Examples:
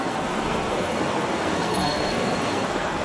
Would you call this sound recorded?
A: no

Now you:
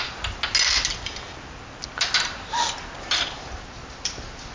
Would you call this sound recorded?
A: yes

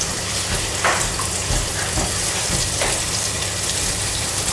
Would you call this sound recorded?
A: no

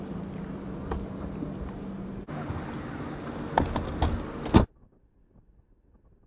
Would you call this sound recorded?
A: yes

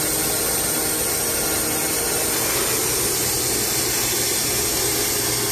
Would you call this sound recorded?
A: yes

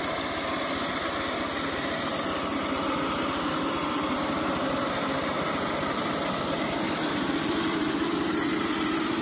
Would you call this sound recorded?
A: no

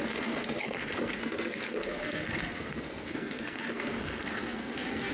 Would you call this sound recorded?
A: no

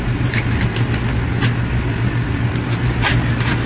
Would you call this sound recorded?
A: yes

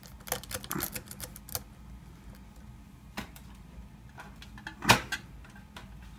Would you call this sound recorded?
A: yes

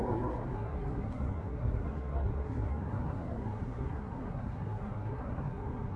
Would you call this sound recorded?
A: no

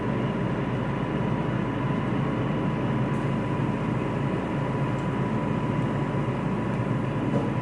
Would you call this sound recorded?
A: yes